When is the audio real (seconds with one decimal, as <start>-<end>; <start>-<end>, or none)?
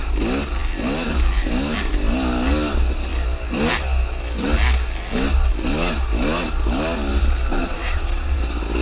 0.0-7.6; 8.4-8.8